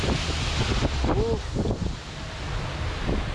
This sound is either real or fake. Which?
real